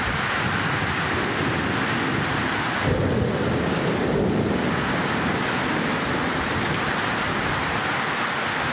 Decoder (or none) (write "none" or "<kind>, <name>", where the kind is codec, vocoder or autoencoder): none